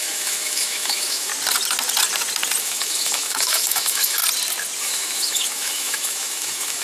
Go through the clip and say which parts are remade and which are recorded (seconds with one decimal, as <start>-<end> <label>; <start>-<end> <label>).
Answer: 0.0-1.3 remade; 1.3-2.6 recorded; 2.6-4.2 remade; 4.2-4.8 recorded; 4.8-6.8 remade